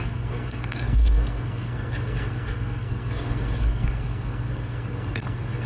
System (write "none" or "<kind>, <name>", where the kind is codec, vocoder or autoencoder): codec, SNAC